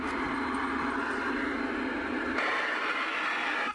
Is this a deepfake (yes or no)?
no